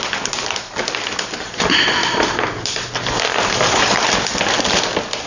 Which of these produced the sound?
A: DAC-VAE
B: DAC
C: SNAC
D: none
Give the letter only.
D